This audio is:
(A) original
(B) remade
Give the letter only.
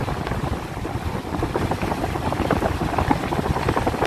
A